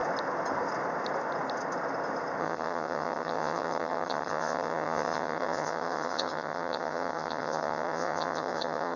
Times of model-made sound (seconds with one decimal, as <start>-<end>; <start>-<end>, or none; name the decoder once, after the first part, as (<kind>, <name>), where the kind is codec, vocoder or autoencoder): 2.4-9.0 (vocoder, HiFi-GAN)